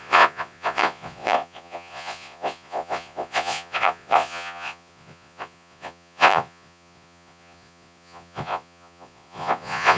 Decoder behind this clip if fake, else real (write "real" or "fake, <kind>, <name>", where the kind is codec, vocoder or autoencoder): fake, vocoder, Vocos